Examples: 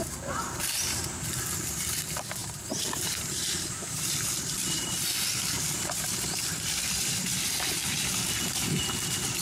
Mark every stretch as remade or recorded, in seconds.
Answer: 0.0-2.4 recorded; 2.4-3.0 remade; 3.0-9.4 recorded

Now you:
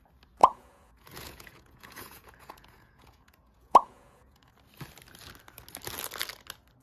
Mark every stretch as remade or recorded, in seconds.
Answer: 0.0-0.4 recorded; 0.4-4.5 remade; 4.5-6.8 recorded